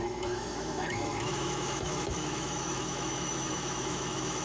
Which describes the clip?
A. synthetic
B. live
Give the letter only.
A